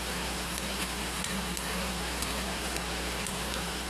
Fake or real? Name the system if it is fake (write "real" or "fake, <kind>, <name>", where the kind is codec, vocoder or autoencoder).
fake, codec, SNAC